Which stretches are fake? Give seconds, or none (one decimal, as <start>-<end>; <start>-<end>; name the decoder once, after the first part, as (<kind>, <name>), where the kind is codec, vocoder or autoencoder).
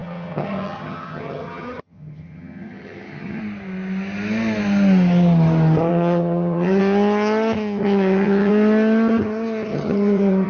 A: 0.0-3.4 (vocoder, HiFi-GAN); 5.9-6.8; 7.8-8.5; 9.7-10.5